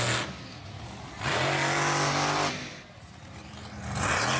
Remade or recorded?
recorded